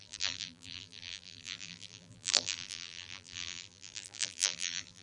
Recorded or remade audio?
remade